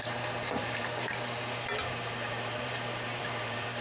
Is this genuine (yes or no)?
no